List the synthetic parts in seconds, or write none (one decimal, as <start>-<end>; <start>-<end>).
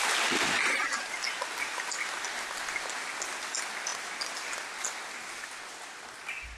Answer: none